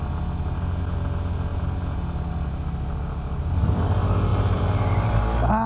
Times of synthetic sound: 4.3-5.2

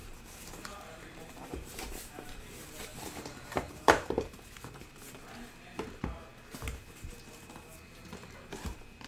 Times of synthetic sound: 0.0-4.3

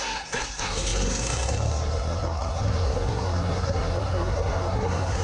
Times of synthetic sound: 0.0-5.2

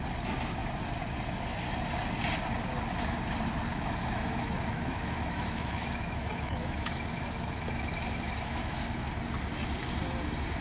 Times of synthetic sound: 3.7-8.8

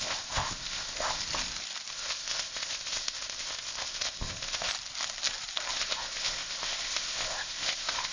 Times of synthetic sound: 0.0-1.2; 1.9-4.7; 5.7-8.1

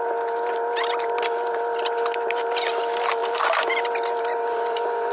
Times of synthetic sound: none

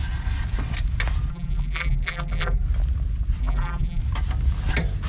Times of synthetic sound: 1.3-2.6; 3.4-4.0